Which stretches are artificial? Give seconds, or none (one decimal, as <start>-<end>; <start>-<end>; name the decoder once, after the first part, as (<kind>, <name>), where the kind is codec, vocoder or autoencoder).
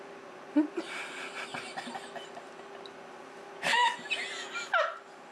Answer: none